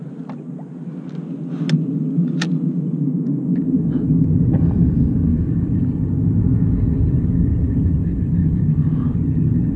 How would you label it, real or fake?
real